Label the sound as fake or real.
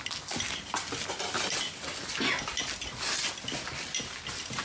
real